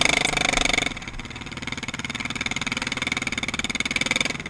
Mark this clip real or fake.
real